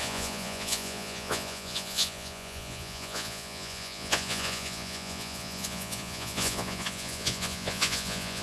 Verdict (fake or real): fake